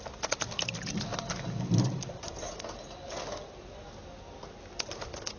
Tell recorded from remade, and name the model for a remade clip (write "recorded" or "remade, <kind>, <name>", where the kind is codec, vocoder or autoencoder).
recorded